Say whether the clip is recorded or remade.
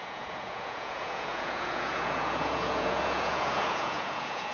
remade